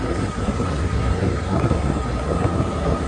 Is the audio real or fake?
fake